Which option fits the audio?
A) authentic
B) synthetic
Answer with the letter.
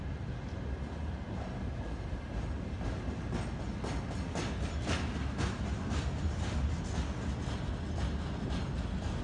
A